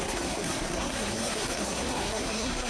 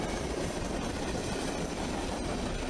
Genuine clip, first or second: second